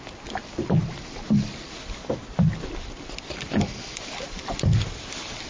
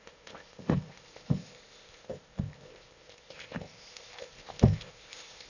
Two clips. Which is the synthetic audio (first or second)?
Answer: second